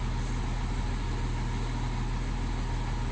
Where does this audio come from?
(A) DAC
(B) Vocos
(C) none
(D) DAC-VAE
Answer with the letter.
C